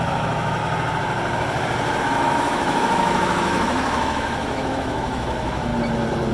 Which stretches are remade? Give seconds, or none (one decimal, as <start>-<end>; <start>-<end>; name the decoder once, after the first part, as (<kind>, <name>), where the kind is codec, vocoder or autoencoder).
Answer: 0.0-0.6 (autoencoder, DAC-VAE); 2.0-5.7